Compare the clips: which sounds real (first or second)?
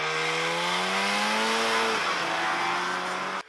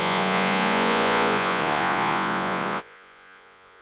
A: first